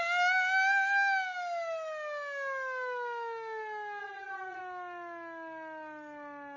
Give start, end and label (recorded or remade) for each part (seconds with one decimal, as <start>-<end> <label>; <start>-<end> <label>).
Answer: 0.0-4.0 recorded; 4.0-4.6 remade; 4.6-6.6 recorded